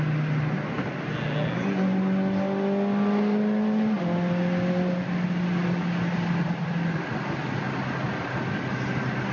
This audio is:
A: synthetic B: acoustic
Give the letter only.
B